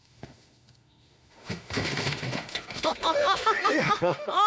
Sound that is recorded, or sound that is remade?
remade